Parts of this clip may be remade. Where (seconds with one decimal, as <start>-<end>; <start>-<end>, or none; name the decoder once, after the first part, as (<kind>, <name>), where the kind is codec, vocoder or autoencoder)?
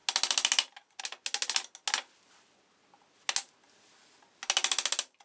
none